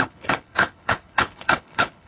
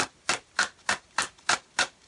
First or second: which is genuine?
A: second